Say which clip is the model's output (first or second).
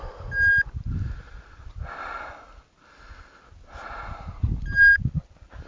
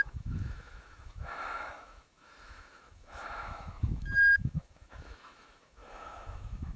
second